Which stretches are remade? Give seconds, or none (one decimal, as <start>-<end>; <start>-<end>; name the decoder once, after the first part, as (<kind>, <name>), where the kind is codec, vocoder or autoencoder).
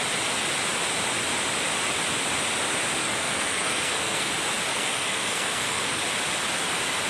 3.0-4.3 (codec, SNAC); 4.7-6.0